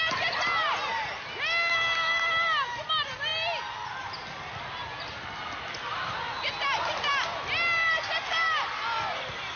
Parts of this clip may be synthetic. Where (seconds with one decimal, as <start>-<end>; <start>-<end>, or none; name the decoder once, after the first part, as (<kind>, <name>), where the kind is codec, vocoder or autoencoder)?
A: none